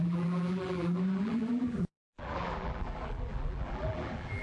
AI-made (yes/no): yes